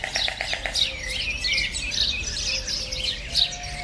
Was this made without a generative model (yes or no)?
yes